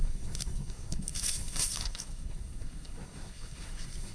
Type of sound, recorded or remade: remade